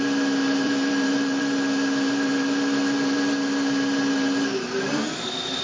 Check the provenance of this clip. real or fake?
fake